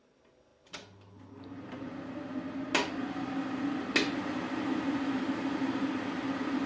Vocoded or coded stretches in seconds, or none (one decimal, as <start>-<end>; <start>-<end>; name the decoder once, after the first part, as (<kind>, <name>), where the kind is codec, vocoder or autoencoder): 0.5-2.1 (vocoder, BigVGAN v2)